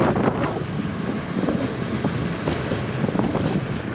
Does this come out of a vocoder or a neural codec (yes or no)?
no